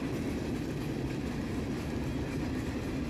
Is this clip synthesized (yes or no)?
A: no